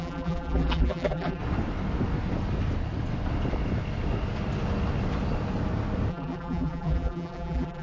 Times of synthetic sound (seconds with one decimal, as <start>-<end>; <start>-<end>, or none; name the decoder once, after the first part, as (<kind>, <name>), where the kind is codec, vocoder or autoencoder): 0.0-1.4 (vocoder, BigVGAN v2); 6.1-7.8